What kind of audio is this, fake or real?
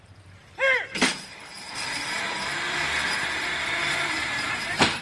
fake